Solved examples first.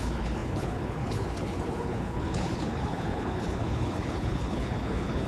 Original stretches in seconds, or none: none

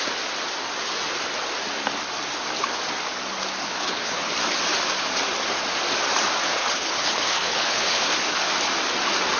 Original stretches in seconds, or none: 0.0-3.6; 4.3-6.5; 8.1-9.4

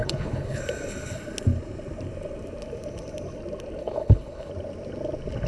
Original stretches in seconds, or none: 0.6-3.8; 4.5-5.5

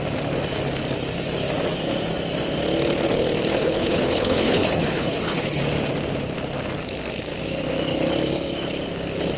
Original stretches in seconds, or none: 0.0-3.5; 5.6-9.4

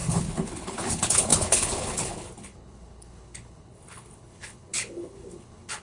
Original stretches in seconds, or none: none